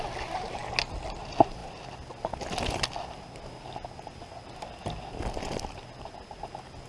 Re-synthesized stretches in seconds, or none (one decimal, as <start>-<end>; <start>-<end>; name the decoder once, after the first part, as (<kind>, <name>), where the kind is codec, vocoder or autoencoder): none